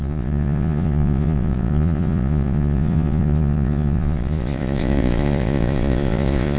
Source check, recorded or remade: remade